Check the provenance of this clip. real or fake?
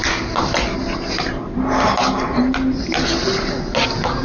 real